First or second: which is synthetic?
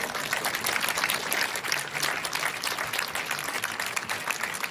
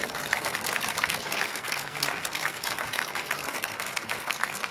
second